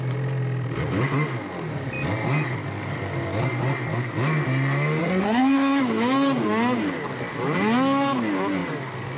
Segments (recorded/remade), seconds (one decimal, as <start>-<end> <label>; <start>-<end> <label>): 0.0-5.0 recorded; 5.0-5.8 remade; 5.8-9.2 recorded